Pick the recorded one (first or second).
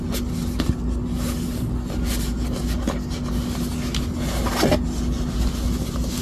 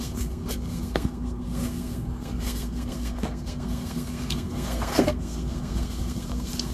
first